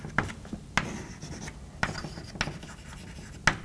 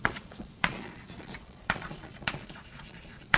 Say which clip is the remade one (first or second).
second